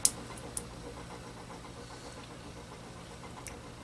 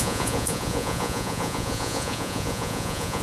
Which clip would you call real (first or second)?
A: first